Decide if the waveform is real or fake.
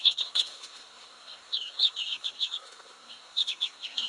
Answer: fake